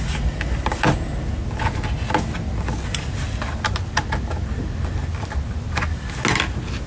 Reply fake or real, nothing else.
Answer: real